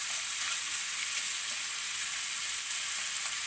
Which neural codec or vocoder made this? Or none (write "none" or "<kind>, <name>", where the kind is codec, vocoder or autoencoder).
none